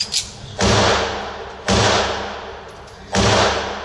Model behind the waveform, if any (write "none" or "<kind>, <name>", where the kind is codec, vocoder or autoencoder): none